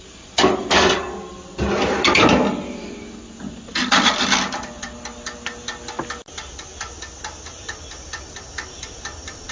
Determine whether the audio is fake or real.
real